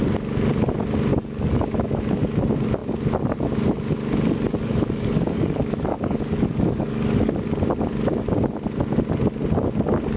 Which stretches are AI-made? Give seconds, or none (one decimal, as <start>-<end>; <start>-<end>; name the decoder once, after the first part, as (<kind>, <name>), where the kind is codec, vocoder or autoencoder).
1.1-2.2 (codec, DAC); 4.5-7.3